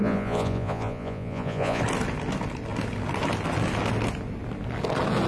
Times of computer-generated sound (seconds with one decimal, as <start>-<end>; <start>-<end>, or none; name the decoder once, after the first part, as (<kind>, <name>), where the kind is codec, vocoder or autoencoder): 0.0-1.8 (vocoder, Vocos)